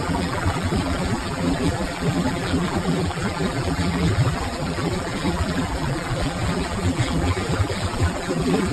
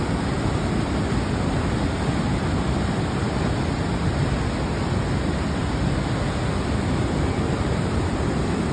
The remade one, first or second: first